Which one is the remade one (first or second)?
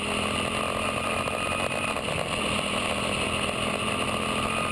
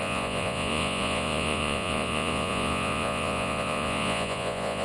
second